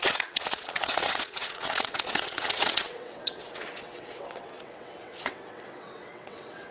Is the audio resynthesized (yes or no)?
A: yes